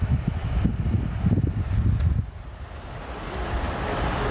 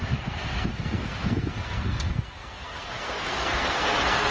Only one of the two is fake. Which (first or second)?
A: second